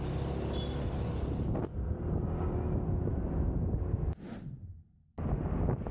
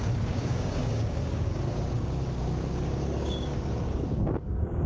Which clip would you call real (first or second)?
first